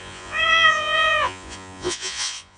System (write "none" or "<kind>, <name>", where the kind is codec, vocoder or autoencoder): vocoder, Vocos